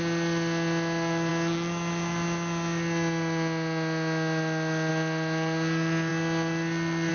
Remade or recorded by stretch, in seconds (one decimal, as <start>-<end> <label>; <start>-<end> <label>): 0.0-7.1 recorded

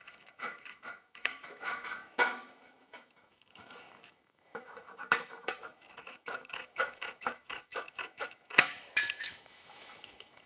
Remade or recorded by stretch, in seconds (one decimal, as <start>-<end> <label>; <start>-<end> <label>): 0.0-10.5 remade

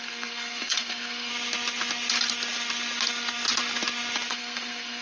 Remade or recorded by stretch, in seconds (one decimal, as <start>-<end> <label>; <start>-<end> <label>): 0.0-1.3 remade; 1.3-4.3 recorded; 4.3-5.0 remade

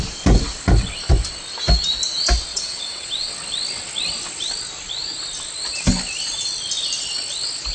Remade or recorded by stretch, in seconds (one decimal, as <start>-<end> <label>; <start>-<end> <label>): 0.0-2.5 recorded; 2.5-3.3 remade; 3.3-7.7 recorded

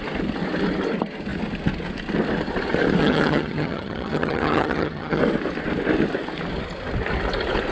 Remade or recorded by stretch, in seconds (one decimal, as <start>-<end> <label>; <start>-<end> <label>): 0.0-3.0 recorded; 3.0-5.2 remade; 5.2-7.7 recorded

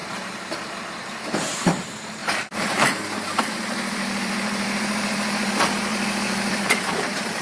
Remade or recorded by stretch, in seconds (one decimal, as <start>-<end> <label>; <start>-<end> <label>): 0.0-1.8 remade; 1.8-2.2 recorded; 2.2-5.5 remade; 5.5-5.9 recorded; 5.9-7.4 remade

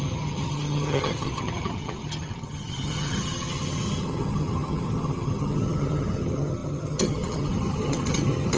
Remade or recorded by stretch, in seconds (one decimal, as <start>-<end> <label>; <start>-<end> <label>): 0.0-8.6 remade

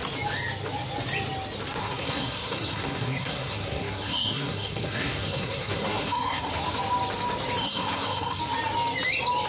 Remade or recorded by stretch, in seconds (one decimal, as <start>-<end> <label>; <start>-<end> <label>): 0.0-1.8 recorded; 1.8-6.5 remade; 6.5-7.6 recorded; 7.6-8.4 remade; 8.4-9.5 recorded